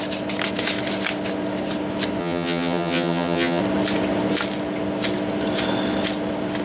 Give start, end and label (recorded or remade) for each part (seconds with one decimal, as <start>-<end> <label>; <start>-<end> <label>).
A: 0.0-2.2 recorded; 2.2-3.6 remade; 3.6-6.6 recorded

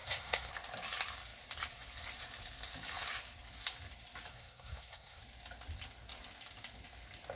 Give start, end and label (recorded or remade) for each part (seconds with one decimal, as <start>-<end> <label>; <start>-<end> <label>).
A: 0.0-0.5 remade; 0.5-4.3 recorded; 4.3-5.2 remade; 5.2-7.4 recorded

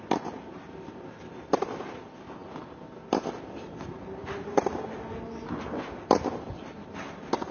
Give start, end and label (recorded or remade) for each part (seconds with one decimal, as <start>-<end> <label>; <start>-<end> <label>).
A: 0.0-7.5 recorded

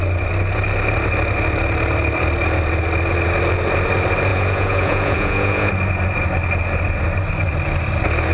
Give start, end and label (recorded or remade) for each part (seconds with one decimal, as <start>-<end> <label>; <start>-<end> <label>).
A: 0.0-4.3 recorded; 4.3-5.7 remade; 5.7-8.3 recorded

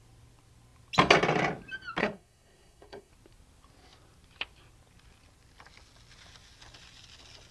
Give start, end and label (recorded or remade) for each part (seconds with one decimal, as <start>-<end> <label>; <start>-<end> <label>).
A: 0.0-2.0 recorded; 2.0-3.1 remade; 3.1-7.5 recorded